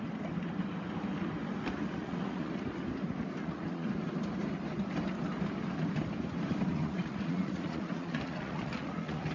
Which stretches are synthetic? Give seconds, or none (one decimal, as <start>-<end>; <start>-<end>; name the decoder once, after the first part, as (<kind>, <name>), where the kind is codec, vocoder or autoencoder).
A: 2.0-2.6 (vocoder, Vocos); 3.4-3.9; 6.7-9.3